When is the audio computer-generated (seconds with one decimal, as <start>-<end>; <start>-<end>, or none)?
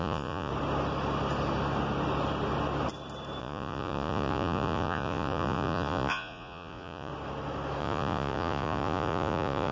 0.0-0.5; 3.4-7.1; 7.8-9.7